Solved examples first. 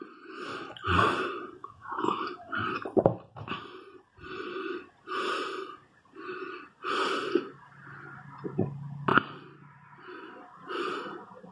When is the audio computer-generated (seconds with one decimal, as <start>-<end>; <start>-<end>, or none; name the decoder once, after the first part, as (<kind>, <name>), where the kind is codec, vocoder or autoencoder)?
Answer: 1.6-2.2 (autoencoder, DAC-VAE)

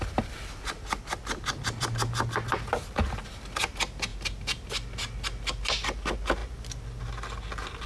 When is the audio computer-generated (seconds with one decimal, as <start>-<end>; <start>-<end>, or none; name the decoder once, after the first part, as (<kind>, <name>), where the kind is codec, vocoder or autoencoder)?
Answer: none

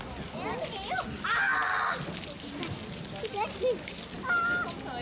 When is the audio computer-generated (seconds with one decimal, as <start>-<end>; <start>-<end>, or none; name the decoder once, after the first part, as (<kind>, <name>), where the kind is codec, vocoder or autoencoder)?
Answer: none